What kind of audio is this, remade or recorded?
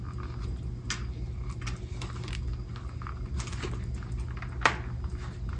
recorded